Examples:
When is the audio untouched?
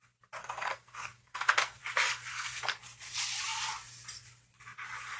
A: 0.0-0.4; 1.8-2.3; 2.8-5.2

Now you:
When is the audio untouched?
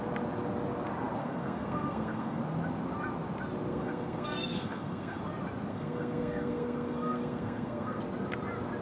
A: 0.0-1.2; 2.4-3.7; 5.2-5.7; 8.0-8.8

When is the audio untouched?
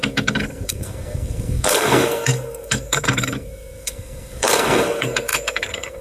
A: none